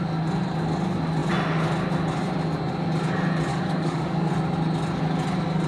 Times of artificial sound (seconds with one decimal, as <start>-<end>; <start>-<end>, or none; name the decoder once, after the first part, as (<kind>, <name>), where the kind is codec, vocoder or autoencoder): 3.5-4.3 (codec, DAC)